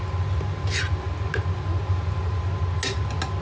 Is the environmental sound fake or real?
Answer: real